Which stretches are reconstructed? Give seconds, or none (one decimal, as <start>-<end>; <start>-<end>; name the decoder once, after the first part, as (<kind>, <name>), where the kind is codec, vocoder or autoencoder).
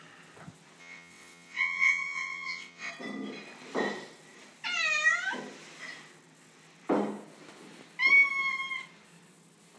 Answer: 0.8-2.9 (vocoder, WaveNeXt)